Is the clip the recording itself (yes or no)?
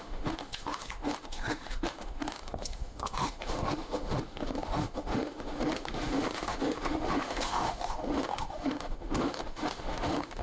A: no